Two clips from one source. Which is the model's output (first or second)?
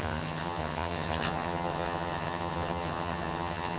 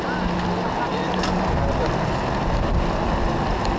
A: first